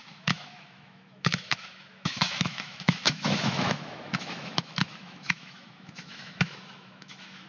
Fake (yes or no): yes